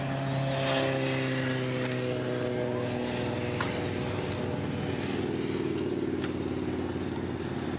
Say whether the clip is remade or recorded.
recorded